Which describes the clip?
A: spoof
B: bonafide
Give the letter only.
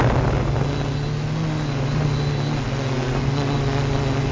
B